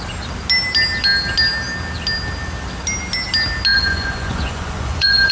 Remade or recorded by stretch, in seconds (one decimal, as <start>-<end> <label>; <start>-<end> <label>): 0.0-3.7 recorded; 3.7-5.3 remade